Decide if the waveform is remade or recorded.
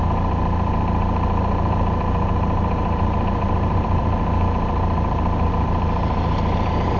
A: remade